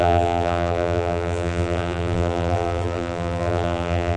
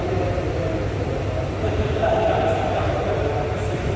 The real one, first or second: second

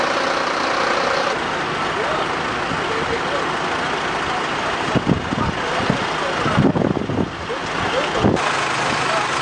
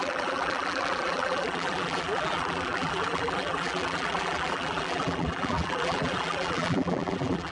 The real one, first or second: first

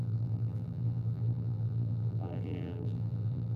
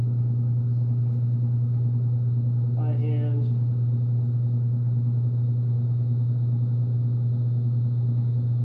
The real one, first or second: second